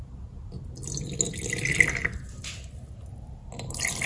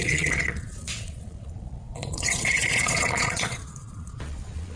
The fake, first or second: second